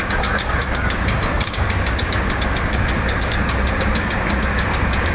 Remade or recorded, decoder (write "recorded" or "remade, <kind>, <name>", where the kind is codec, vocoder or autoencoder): remade, codec, DAC